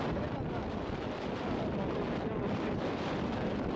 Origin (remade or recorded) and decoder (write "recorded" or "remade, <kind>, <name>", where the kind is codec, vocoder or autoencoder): recorded